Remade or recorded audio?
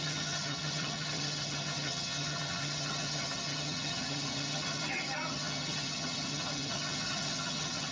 remade